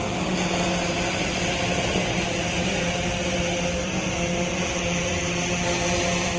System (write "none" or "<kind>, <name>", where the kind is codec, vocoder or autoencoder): none